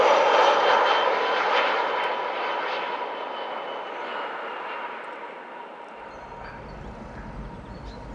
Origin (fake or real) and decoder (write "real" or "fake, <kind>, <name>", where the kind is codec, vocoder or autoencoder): real